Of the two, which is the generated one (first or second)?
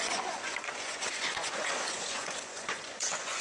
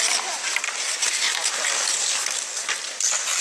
first